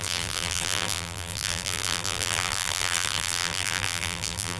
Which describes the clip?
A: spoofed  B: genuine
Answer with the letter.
A